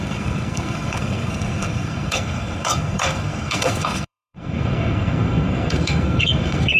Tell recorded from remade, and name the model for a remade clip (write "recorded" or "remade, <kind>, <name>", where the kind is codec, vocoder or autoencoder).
remade, codec, SNAC